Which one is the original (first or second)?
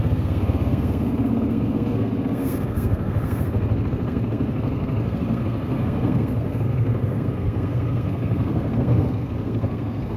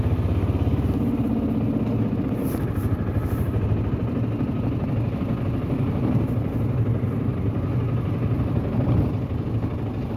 second